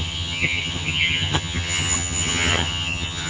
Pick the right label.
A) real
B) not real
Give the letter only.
B